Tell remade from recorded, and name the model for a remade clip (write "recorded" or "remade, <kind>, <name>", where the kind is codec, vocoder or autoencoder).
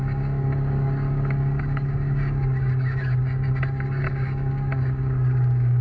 remade, codec, DAC